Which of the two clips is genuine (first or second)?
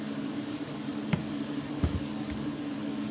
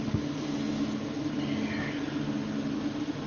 second